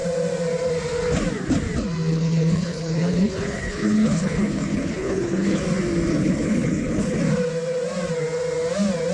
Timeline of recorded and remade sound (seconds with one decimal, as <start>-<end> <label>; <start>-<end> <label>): 0.0-2.1 recorded; 2.1-5.6 remade; 5.6-6.1 recorded; 6.1-7.2 remade; 7.2-9.1 recorded